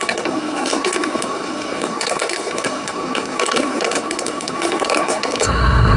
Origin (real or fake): fake